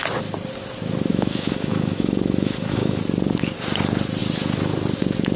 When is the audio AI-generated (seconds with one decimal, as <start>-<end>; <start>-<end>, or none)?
1.1-3.0